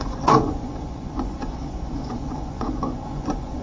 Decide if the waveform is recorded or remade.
remade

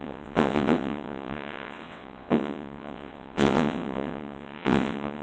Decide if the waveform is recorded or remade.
remade